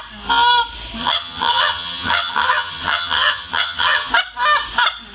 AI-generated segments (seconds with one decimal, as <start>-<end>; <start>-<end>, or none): 1.0-4.1